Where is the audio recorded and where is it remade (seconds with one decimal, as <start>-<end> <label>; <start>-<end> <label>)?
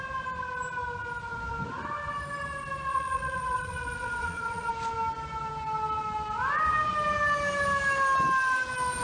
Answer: 0.0-2.9 recorded; 2.9-4.7 remade; 4.7-9.0 recorded